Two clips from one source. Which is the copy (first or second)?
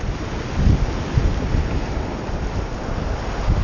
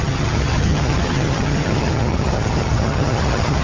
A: second